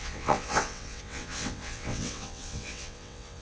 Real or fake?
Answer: fake